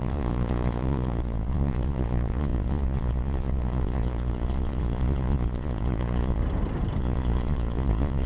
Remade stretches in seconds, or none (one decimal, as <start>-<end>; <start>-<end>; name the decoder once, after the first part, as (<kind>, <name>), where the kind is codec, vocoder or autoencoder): 0.0-6.4 (vocoder, Vocos); 7.0-8.3